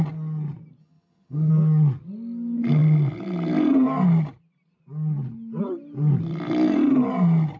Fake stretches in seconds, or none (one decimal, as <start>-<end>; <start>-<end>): 0.8-1.5